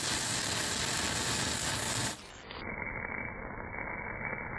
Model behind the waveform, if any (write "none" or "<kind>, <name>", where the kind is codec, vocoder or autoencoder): none